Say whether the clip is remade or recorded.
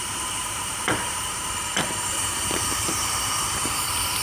remade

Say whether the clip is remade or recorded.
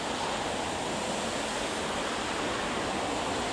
recorded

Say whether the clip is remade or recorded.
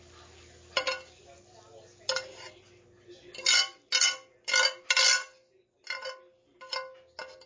recorded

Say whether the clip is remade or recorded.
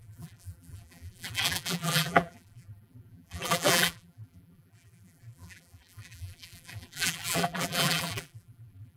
remade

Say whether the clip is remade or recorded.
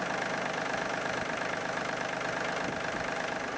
remade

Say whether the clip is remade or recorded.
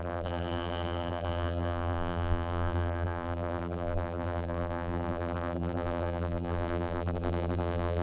remade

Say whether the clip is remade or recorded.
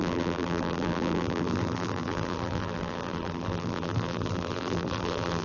remade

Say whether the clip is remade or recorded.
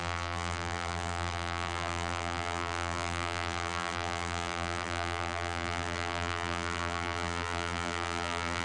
remade